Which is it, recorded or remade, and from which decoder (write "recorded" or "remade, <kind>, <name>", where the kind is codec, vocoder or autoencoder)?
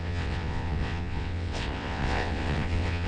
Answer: remade, vocoder, WaveNeXt